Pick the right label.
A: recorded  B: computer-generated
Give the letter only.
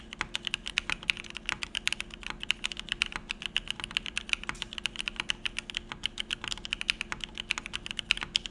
A